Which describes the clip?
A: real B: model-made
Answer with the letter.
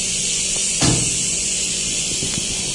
B